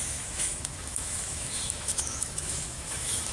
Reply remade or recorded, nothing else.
remade